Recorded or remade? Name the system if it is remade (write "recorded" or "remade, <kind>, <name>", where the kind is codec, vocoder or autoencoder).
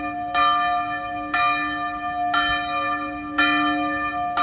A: recorded